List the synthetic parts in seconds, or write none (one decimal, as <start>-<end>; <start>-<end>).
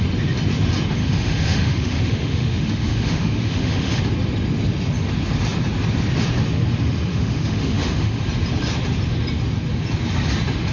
1.0-4.0; 7.1-8.2